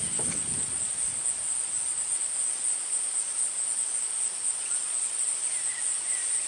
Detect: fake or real real